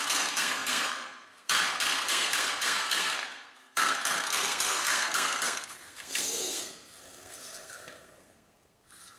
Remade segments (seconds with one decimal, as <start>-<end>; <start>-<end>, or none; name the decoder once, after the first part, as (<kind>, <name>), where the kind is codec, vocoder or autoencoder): 0.0-9.2 (codec, SNAC)